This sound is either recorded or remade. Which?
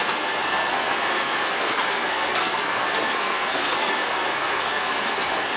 remade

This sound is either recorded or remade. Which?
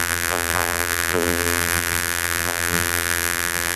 remade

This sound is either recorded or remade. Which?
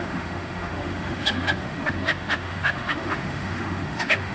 remade